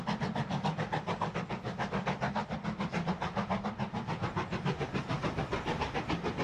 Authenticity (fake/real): real